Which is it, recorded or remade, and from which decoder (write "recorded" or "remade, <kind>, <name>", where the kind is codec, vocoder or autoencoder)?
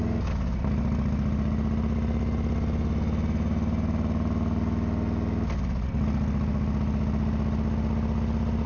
recorded